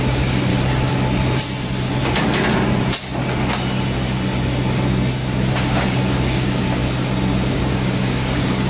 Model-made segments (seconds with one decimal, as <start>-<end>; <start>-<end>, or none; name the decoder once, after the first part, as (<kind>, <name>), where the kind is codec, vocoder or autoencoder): 0.0-0.5 (codec, DAC); 5.5-6.8; 7.5-8.7